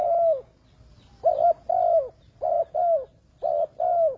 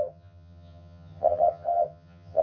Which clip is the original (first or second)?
first